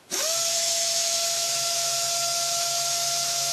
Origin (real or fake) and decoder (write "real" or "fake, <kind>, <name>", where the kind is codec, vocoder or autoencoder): fake, autoencoder, DAC-VAE